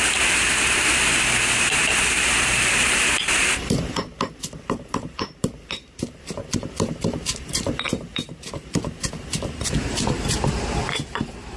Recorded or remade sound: remade